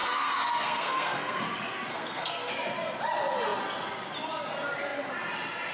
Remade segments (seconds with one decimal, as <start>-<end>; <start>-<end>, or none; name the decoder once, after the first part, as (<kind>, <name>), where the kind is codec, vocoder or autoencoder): 0.0-1.4 (codec, SNAC); 1.9-2.5